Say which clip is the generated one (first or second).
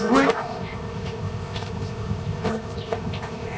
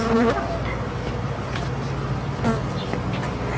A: first